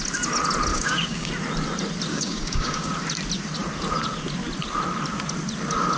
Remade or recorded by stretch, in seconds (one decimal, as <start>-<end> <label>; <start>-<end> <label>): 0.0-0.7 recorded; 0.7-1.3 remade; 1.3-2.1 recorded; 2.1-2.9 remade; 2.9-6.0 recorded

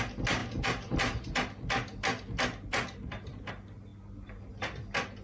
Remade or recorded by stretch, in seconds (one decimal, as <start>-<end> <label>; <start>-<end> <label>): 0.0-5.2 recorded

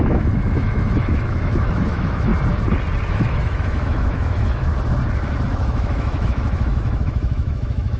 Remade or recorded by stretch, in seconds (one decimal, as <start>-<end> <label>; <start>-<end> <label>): 0.0-2.3 remade; 2.3-3.1 recorded; 3.1-4.7 remade; 4.7-5.5 recorded; 5.5-8.0 remade

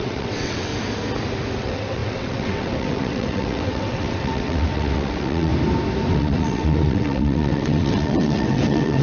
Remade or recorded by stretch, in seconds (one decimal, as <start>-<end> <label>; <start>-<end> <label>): 0.0-0.7 remade; 0.7-1.5 recorded; 1.5-5.5 remade; 5.5-6.1 recorded; 6.1-9.0 remade

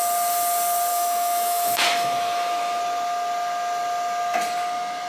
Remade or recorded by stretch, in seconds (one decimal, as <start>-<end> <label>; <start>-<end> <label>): 0.0-0.9 recorded; 0.9-2.8 remade; 2.8-5.1 recorded